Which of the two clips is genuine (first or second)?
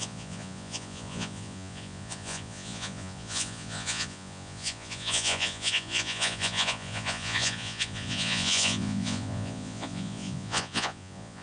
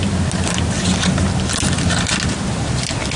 second